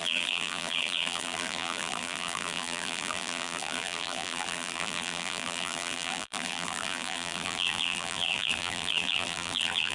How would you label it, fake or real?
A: fake